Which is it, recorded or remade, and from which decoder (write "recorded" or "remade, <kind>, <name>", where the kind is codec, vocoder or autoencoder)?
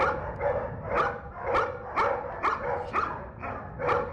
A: recorded